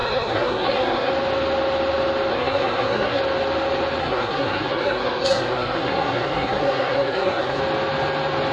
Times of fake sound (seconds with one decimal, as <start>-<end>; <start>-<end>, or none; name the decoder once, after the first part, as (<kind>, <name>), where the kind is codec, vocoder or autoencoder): 0.0-1.1 (codec, SNAC); 2.3-3.2; 4.0-7.6